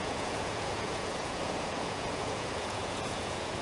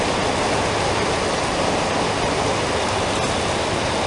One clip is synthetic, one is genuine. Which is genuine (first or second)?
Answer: second